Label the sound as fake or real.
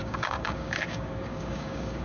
fake